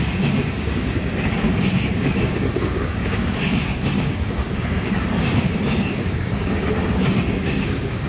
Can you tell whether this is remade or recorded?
remade